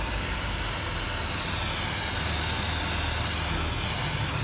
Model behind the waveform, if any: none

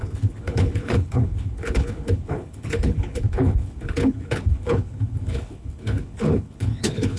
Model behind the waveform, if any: codec, HILCodec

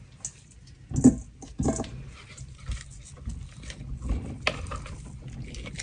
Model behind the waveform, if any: none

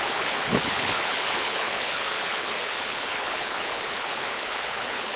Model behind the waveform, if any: codec, HILCodec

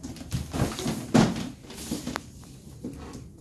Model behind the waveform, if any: none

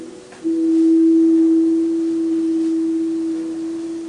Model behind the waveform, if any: none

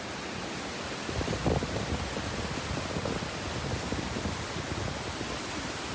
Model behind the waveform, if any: none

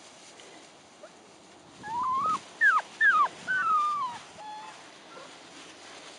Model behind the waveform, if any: none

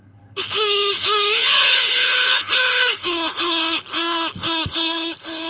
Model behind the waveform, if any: codec, HILCodec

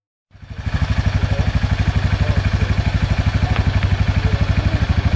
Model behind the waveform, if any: none